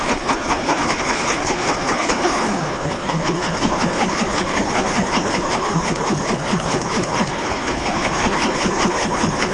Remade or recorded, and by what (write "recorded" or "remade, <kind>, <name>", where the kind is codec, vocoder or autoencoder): remade, codec, HILCodec